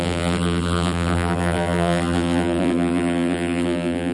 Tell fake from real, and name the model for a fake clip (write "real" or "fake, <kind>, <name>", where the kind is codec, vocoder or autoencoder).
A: fake, vocoder, BigVGAN v2